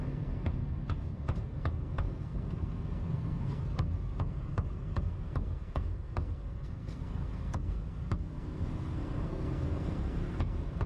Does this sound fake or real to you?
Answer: fake